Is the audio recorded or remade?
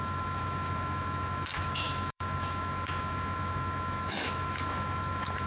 remade